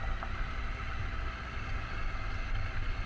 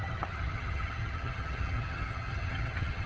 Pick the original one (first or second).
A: first